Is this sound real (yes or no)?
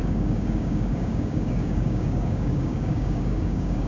no